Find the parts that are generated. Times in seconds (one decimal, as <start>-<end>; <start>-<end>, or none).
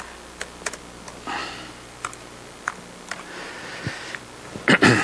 1.4-2.6